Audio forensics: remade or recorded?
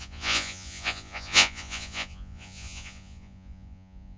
remade